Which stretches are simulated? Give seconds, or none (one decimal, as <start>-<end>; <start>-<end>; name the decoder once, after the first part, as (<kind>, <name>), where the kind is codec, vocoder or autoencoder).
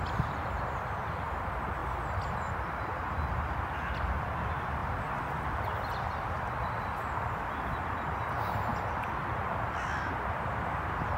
none